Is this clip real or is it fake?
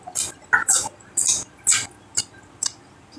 real